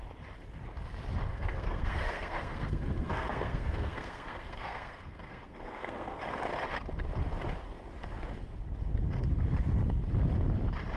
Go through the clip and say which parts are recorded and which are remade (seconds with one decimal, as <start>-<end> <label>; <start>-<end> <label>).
0.0-1.3 recorded; 1.3-6.2 remade; 6.2-11.0 recorded